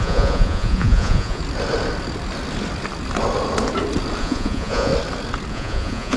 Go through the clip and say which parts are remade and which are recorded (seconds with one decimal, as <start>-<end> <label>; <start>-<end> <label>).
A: 0.0-1.4 remade; 1.4-4.2 recorded; 4.2-4.9 remade; 4.9-5.5 recorded; 5.5-6.2 remade